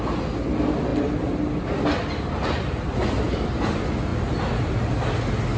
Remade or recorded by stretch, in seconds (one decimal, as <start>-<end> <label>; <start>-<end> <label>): 0.0-5.6 recorded

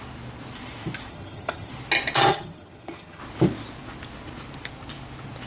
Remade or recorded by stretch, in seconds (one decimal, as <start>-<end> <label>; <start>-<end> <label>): 0.0-1.1 recorded; 1.1-1.7 remade; 1.7-2.3 recorded; 2.3-3.2 remade; 3.2-5.5 recorded